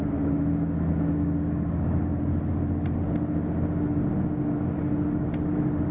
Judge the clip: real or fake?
real